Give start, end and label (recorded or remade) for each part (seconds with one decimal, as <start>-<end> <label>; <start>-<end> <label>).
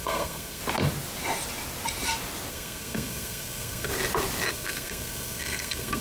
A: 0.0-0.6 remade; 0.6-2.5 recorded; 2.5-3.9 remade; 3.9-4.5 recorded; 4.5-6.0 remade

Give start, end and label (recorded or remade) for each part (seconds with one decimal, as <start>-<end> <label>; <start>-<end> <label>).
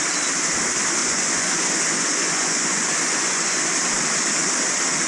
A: 0.0-1.0 recorded; 1.0-3.7 remade; 3.7-5.1 recorded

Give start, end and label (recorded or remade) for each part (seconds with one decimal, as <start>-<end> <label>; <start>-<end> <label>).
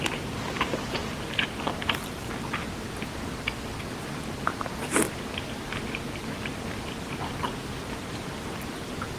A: 0.0-9.2 recorded